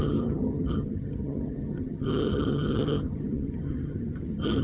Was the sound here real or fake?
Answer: fake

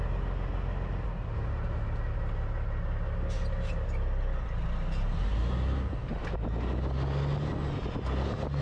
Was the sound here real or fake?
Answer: real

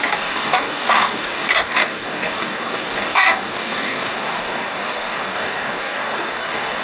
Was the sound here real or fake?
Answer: fake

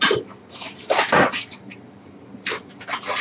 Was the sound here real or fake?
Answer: real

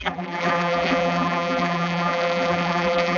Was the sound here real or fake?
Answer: fake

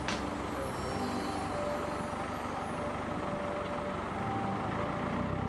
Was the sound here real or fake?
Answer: real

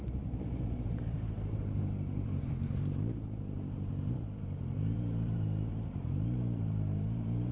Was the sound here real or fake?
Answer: fake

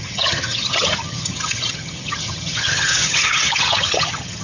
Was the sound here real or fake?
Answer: fake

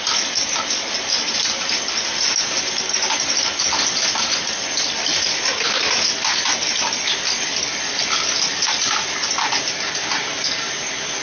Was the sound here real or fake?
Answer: real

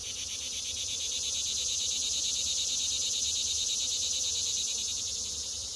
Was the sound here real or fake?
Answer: fake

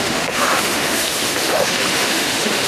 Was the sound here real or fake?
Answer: fake